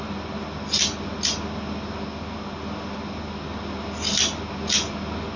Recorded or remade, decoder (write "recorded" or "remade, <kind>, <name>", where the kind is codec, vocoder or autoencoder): recorded